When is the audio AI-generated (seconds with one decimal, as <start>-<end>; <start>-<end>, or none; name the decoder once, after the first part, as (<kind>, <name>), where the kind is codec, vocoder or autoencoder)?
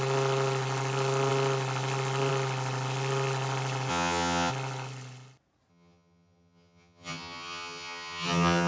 3.9-4.5 (vocoder, HiFi-GAN); 5.7-8.7